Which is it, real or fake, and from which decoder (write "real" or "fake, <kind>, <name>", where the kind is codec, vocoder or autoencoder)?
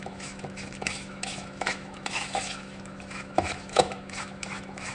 fake, autoencoder, DAC-VAE